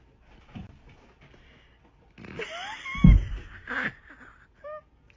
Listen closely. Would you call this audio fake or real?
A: real